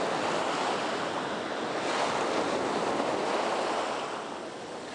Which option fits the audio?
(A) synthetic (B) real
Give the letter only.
B